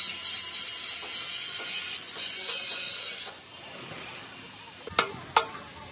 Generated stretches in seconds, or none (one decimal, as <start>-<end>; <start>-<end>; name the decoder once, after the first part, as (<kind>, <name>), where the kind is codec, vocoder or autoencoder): 1.3-3.4 (vocoder, Vocos)